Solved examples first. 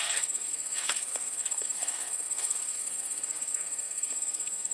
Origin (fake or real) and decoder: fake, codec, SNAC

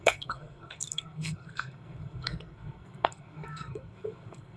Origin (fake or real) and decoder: fake, codec, SNAC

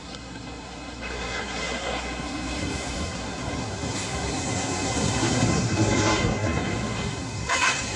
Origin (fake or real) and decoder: fake, codec, SNAC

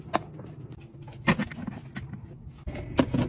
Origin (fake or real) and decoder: real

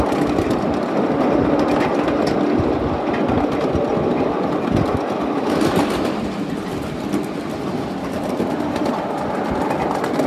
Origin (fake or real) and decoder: real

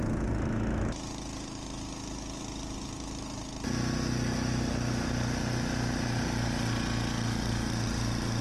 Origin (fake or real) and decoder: real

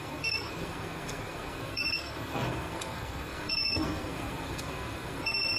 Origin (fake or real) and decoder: fake, codec, SNAC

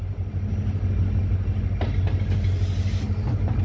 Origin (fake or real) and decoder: real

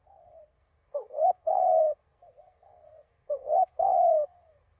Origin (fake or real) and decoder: fake, codec, SNAC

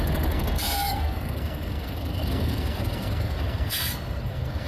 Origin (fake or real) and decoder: fake, codec, SNAC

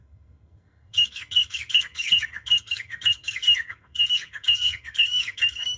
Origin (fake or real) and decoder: fake, codec, SNAC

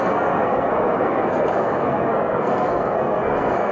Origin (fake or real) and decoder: fake, codec, SNAC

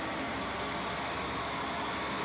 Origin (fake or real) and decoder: real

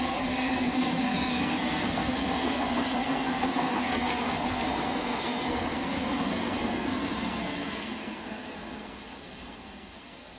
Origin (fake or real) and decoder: fake, codec, SNAC